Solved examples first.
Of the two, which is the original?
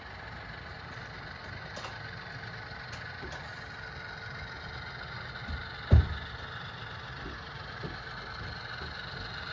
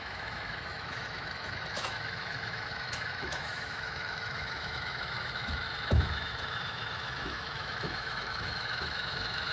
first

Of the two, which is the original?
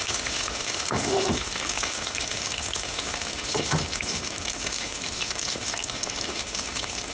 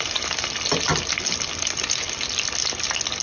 second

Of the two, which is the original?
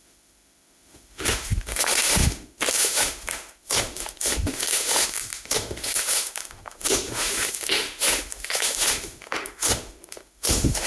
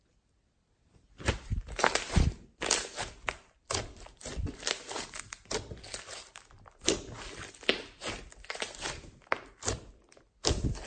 second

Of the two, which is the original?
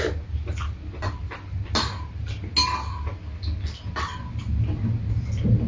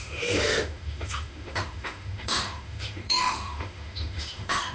first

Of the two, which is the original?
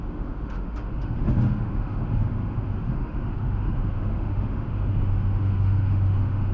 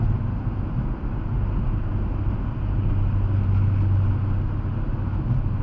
second